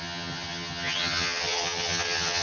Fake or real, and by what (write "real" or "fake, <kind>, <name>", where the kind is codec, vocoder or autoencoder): fake, vocoder, HiFi-GAN